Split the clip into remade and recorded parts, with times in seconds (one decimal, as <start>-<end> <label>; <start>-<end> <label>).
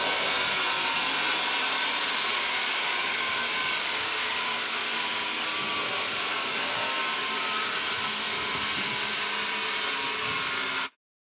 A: 0.0-2.3 recorded; 2.3-5.5 remade; 5.5-6.1 recorded; 6.1-7.8 remade; 7.8-11.2 recorded